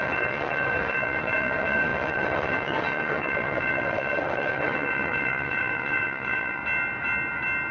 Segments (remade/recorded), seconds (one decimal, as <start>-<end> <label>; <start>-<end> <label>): 0.0-6.6 remade; 6.6-7.7 recorded